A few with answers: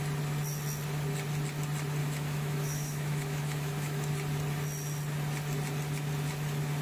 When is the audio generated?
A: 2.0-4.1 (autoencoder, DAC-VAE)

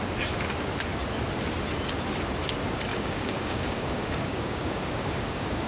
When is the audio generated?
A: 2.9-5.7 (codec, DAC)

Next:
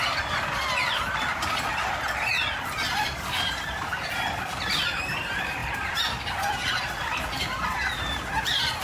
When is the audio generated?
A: 1.3-5.0 (vocoder, BigVGAN v2)

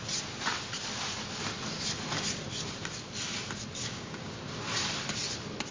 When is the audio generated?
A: 3.8-4.4 (codec, DAC)

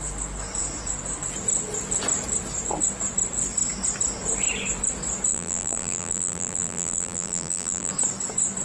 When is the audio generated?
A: 5.3-7.9 (vocoder, BigVGAN v2)